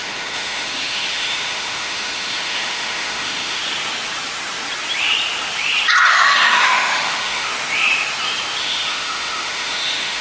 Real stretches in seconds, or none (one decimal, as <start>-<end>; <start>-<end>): 3.6-6.1; 7.5-8.6